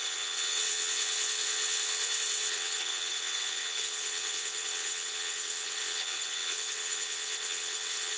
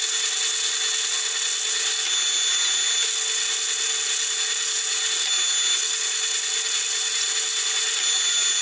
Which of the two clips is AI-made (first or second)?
first